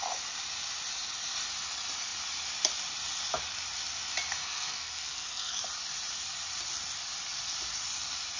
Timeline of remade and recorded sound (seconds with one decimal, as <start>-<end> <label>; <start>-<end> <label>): 0.0-4.4 recorded; 4.4-5.6 remade; 5.6-8.4 recorded